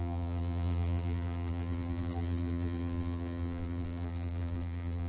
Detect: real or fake fake